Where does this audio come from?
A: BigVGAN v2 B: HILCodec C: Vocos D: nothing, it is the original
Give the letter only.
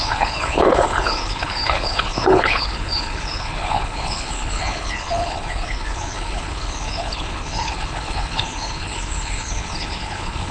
B